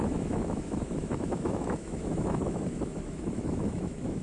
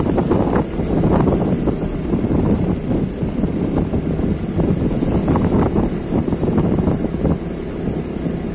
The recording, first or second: second